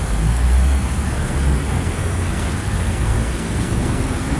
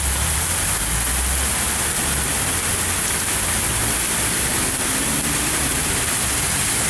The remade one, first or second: first